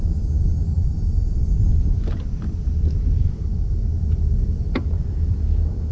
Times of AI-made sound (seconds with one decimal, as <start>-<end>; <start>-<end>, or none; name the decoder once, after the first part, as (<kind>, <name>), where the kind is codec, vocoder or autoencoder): none